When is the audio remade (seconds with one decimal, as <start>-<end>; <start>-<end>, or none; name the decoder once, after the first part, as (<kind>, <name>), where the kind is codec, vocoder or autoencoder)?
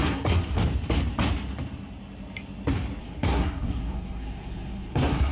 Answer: 0.0-0.6 (codec, SNAC); 3.0-5.3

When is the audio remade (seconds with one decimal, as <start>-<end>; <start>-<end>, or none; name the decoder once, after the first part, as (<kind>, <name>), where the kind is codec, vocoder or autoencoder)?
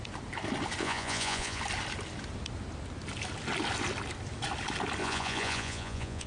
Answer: 0.8-1.6 (vocoder, Vocos); 5.0-6.3